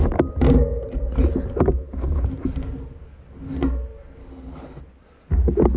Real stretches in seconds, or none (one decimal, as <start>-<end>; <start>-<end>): 0.0-4.2; 4.8-5.8